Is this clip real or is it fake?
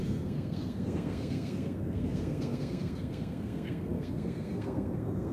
fake